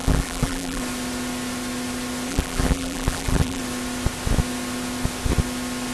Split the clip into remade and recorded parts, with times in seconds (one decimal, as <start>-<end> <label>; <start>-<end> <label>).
0.0-0.8 remade; 0.8-2.3 recorded; 2.3-3.6 remade; 3.6-5.9 recorded